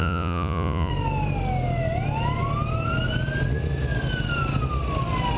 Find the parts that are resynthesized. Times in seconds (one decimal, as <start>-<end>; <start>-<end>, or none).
0.0-0.9